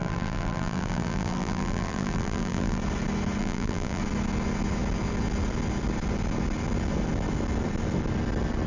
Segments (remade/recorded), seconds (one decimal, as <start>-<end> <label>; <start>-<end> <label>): 0.0-2.8 remade; 2.8-3.4 recorded; 3.4-4.0 remade; 4.0-8.7 recorded